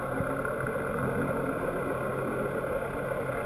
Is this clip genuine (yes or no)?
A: yes